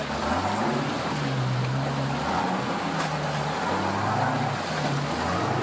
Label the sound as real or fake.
real